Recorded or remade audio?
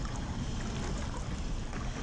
recorded